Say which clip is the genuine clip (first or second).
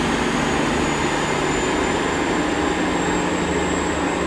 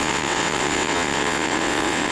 first